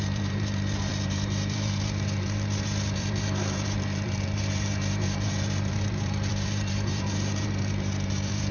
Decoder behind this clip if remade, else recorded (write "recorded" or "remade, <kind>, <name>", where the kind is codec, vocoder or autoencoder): remade, vocoder, BigVGAN v2